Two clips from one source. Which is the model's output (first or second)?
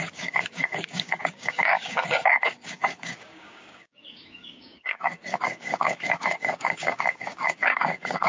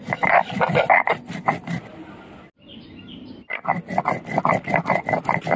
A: first